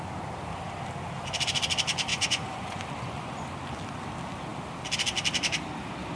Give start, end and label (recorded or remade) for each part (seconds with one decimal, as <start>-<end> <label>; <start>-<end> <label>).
0.0-2.1 recorded; 2.1-3.4 remade; 3.4-6.2 recorded